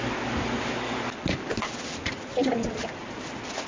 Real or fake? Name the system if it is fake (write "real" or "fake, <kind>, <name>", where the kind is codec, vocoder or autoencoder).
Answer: real